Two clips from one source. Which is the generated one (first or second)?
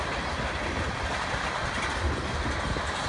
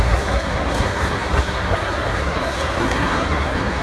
second